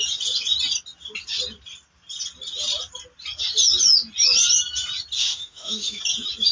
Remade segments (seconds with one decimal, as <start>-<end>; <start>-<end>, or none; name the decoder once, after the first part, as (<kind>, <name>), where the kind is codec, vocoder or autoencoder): 5.2-6.0 (autoencoder, DAC-VAE)